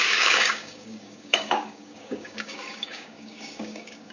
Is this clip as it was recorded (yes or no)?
no